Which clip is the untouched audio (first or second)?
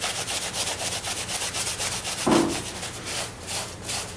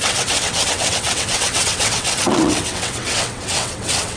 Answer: first